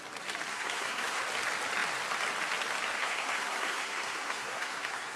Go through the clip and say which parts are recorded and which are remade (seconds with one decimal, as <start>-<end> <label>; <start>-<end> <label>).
0.0-0.5 recorded; 0.5-1.2 remade; 1.2-3.0 recorded; 3.0-5.2 remade